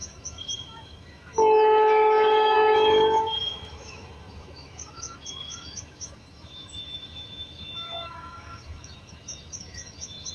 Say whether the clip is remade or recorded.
remade